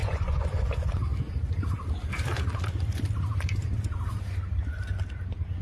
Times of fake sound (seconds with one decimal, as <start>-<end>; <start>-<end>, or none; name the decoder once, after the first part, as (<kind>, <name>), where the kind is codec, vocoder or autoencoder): 0.0-0.7 (vocoder, Vocos)